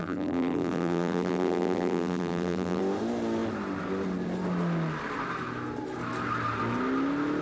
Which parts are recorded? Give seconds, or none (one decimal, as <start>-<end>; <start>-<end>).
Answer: 2.8-7.4